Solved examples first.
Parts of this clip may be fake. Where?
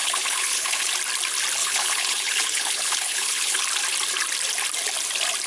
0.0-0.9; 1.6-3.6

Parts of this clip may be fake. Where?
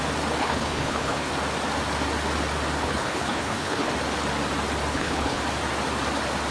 0.4-1.3; 2.8-3.9; 4.9-5.4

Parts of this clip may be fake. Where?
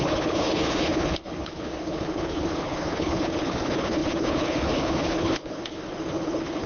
0.0-6.7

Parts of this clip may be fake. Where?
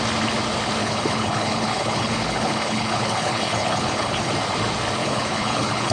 0.8-4.3; 5.0-5.9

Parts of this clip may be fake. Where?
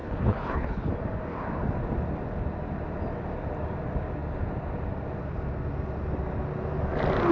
0.0-0.9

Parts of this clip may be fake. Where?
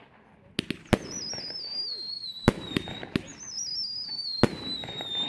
none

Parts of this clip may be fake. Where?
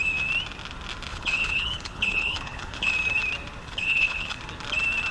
1.1-2.9; 3.6-4.4